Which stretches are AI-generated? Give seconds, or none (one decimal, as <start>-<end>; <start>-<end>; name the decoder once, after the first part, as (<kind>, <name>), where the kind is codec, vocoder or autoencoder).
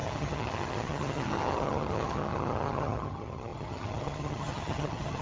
0.0-5.2 (vocoder, HiFi-GAN)